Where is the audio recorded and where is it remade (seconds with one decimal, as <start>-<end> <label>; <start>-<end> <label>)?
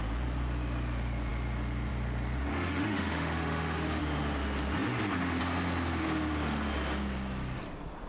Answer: 0.0-2.5 recorded; 2.5-4.0 remade; 4.0-8.1 recorded